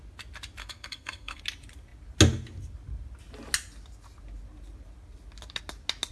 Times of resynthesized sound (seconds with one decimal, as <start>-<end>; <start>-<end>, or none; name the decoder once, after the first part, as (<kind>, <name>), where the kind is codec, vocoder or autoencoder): 0.6-1.4 (codec, SNAC)